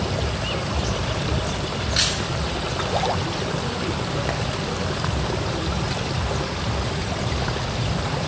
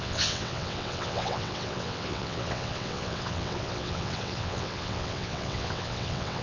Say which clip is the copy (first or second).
second